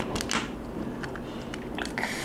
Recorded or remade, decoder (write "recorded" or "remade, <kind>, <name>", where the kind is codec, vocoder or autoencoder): recorded